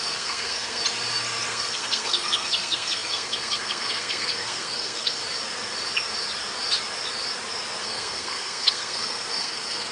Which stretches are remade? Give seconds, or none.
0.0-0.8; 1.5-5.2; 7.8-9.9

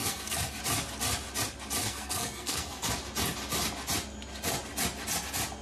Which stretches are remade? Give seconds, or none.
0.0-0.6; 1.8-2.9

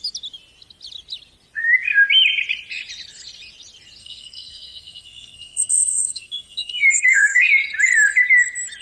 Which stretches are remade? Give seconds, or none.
4.0-7.5